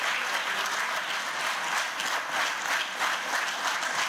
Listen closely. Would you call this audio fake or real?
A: real